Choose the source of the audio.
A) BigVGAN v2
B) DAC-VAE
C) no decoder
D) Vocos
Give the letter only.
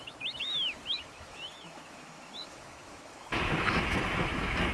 B